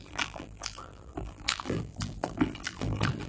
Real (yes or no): no